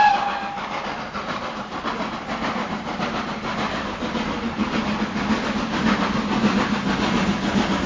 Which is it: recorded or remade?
recorded